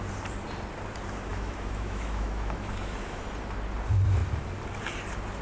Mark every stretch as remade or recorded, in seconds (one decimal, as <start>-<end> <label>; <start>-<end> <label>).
0.0-1.3 recorded; 1.3-3.2 remade; 3.2-5.4 recorded